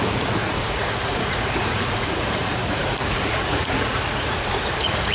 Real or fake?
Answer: fake